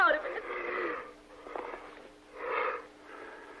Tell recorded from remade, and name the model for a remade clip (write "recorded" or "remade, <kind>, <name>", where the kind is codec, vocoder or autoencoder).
recorded